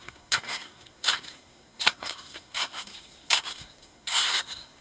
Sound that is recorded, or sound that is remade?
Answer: remade